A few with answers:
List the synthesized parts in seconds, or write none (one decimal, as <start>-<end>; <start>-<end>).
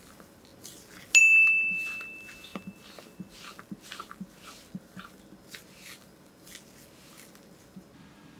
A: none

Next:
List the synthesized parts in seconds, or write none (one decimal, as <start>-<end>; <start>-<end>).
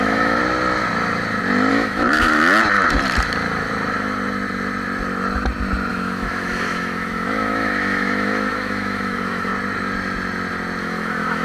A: 0.0-0.4; 1.7-2.4; 5.9-9.5; 10.8-11.4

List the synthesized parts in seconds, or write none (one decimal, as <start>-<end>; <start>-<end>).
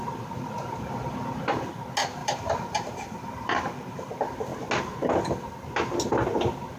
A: 2.2-4.1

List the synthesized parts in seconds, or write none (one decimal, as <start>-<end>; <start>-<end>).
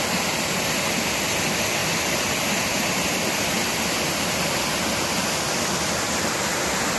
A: none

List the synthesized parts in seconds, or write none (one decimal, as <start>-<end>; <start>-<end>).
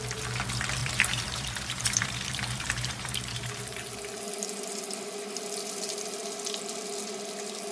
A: 0.8-3.9